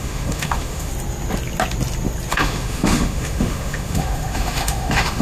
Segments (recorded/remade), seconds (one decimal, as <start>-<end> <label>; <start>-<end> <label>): 0.0-0.9 remade; 0.9-2.3 recorded; 2.3-5.2 remade